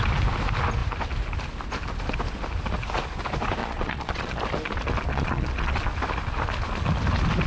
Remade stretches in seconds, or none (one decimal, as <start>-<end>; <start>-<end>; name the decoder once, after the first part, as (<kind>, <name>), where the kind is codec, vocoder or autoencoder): 3.6-4.4 (vocoder, Vocos); 5.1-5.8